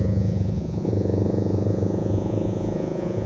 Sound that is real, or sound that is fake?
fake